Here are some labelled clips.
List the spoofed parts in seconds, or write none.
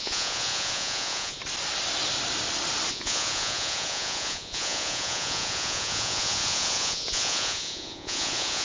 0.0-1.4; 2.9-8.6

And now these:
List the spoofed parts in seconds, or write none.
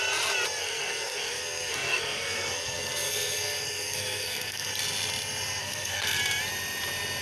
0.6-4.7; 5.6-6.2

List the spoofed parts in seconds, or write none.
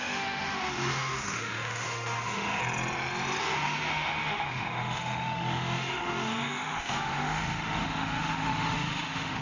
0.0-2.6; 3.4-9.4